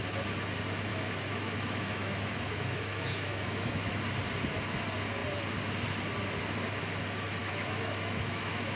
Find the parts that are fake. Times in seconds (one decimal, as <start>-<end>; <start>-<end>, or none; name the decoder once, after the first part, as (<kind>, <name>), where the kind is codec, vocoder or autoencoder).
0.9-3.9 (autoencoder, DAC-VAE); 7.4-8.8